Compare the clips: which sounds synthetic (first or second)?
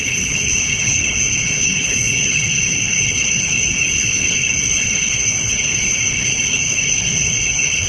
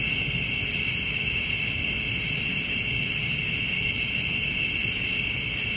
first